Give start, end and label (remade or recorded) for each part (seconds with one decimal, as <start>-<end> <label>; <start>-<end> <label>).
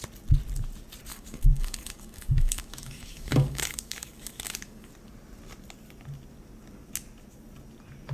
0.0-1.1 recorded; 1.1-4.9 remade; 4.9-8.1 recorded